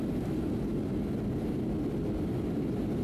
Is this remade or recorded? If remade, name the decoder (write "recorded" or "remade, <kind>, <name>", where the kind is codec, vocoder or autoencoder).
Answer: recorded